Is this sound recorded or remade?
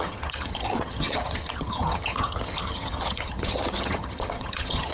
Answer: remade